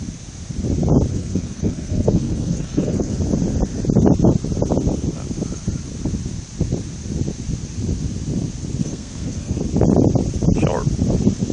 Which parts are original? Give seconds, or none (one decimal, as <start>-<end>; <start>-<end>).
0.0-1.1; 3.2-8.8; 9.6-11.5